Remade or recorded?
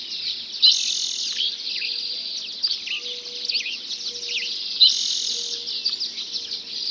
recorded